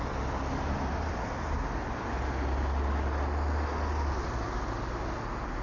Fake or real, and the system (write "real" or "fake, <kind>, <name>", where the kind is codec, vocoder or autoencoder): real